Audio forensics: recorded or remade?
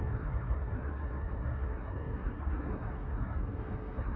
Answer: remade